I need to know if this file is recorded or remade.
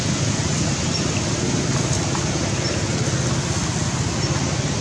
recorded